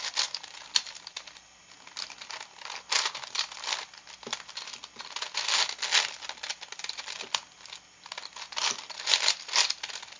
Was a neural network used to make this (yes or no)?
no